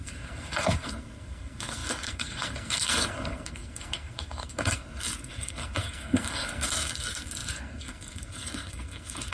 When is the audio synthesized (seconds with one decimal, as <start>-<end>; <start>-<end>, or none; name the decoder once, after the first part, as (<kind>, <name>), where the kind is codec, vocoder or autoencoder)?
0.0-9.3 (codec, SNAC)